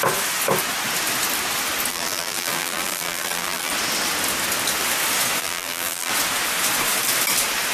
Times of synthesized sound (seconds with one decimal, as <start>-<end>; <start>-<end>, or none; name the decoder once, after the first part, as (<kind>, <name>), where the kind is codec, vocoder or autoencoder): 1.9-3.7 (vocoder, BigVGAN v2); 5.4-6.1